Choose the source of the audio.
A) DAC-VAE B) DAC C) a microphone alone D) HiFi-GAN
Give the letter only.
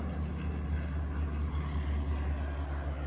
C